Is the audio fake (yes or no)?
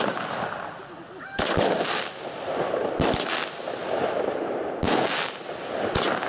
no